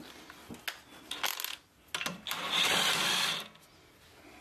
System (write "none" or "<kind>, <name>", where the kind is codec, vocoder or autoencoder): none